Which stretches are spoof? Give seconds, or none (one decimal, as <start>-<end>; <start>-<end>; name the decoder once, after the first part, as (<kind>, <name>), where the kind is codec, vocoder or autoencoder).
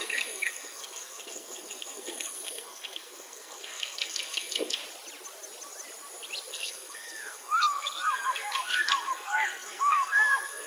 0.0-4.8 (codec, SNAC); 6.5-10.7